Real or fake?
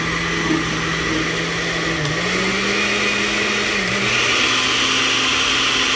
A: real